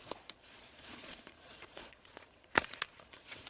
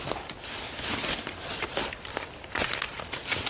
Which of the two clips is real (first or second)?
second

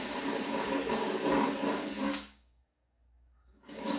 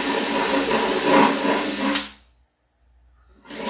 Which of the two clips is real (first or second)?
second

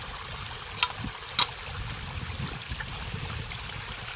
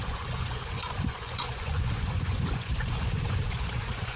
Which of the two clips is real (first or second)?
first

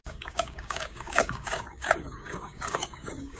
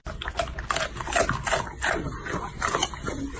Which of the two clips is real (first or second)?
second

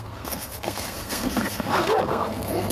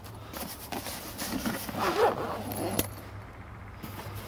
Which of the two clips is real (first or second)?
second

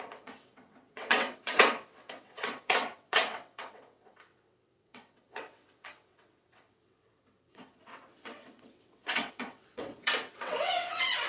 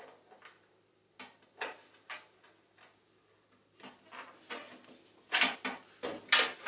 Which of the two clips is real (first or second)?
second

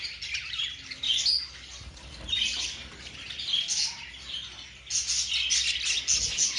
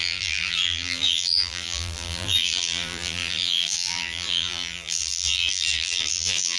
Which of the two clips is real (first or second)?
first